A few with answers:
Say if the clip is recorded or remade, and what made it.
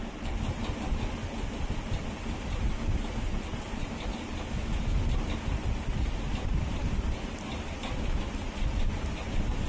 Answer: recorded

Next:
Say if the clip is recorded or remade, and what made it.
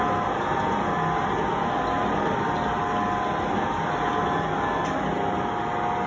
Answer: recorded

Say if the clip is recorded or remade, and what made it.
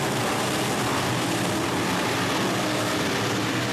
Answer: recorded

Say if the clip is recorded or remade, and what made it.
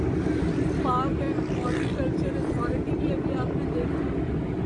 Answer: recorded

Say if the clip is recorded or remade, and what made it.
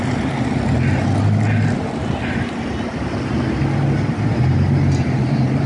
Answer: recorded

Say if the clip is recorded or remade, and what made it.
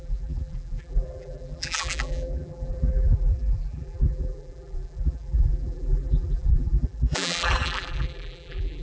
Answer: remade, vocoder, BigVGAN v2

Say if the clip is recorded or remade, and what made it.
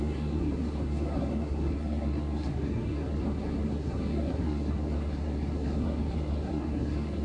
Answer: remade, codec, SNAC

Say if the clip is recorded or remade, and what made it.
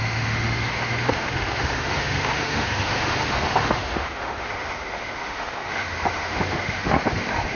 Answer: remade, autoencoder, DAC-VAE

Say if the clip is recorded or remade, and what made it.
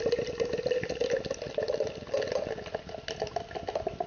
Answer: recorded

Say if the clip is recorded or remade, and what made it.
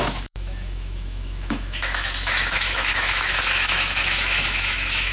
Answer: remade, autoencoder, DAC-VAE